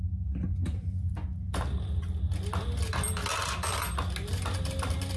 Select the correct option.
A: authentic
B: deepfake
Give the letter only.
A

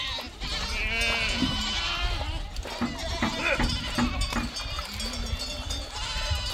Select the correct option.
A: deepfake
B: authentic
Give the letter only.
B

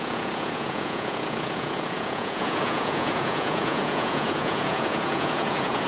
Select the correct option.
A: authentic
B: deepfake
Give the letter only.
B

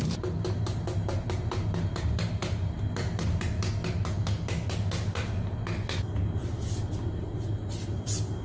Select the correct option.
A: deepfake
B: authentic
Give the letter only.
B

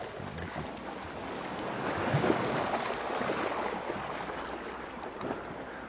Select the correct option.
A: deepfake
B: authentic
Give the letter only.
B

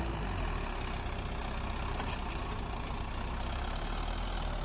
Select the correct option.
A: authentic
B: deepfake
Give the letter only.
A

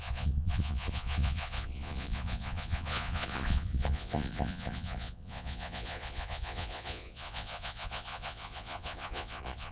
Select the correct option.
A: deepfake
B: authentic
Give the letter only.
A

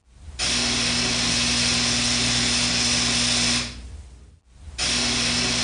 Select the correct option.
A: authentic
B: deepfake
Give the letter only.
A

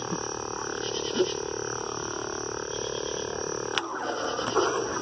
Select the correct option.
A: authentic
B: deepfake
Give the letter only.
A